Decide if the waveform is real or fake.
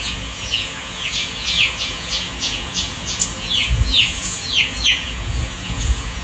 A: fake